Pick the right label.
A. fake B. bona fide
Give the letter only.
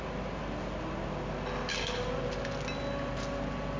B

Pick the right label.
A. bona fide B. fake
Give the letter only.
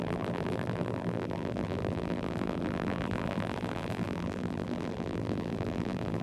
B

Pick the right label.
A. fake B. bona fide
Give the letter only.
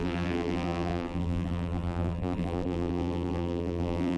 A